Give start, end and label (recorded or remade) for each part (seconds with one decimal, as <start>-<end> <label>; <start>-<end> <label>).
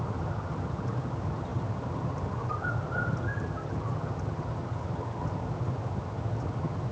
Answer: 0.0-6.9 remade